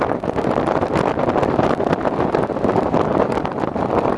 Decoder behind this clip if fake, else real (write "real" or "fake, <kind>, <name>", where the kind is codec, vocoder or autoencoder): real